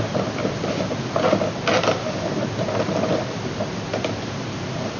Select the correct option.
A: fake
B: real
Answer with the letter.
B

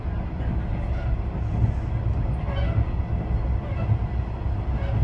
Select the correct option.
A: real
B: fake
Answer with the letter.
A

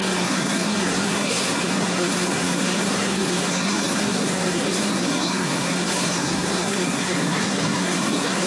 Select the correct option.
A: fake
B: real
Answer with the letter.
A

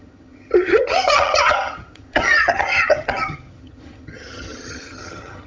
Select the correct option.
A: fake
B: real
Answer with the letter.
A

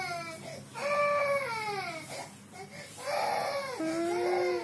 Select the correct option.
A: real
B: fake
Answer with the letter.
A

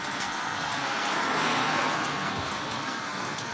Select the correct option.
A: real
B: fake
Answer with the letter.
B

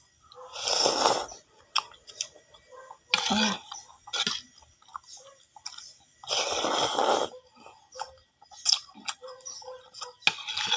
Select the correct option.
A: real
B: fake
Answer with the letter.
A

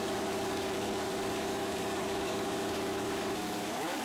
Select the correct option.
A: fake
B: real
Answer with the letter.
A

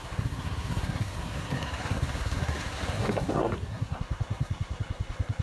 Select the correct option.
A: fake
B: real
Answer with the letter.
A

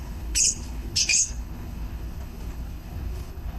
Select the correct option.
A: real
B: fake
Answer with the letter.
B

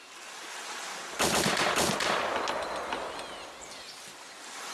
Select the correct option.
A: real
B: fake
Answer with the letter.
A